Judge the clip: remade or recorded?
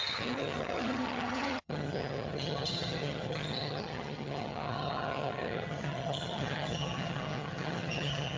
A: remade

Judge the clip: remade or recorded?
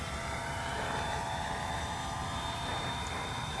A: remade